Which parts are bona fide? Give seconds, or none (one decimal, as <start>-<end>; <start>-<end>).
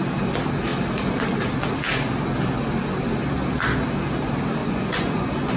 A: 0.0-4.6